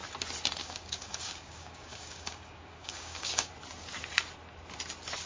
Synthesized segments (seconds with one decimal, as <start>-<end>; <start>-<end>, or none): 0.6-3.5